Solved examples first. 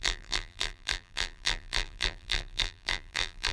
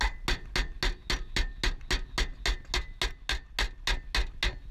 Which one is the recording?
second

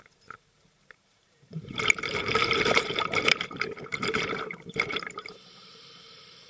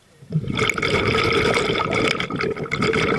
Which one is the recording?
second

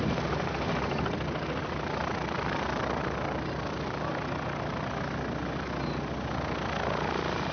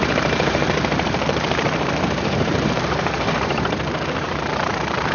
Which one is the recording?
first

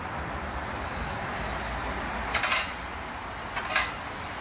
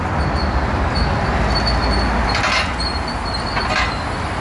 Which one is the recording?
second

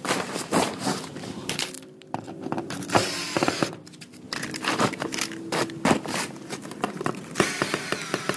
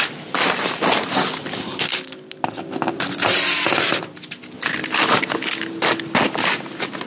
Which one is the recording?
second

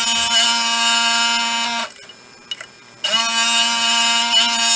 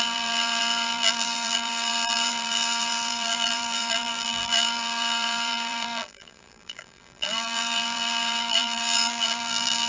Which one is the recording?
first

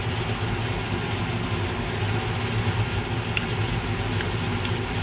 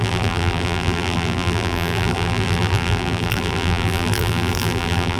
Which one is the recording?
first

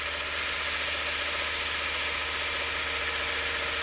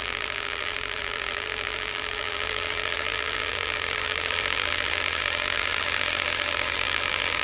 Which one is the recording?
first